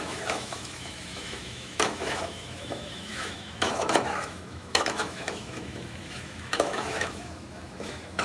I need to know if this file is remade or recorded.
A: remade